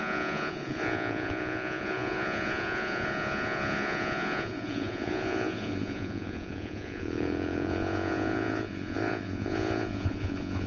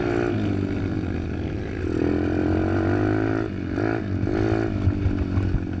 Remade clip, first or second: first